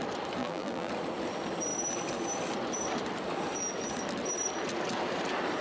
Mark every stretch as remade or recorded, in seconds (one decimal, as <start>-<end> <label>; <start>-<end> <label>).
0.0-0.4 recorded; 0.4-0.9 remade; 0.9-5.6 recorded